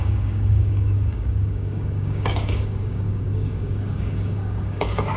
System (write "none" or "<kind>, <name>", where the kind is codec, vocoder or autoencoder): codec, DAC